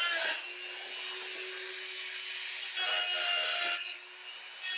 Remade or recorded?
recorded